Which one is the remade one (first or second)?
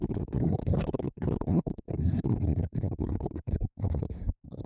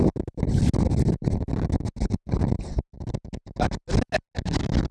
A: first